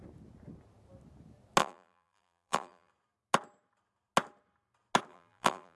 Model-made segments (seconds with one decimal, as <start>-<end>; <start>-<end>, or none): 1.6-2.9; 5.1-5.8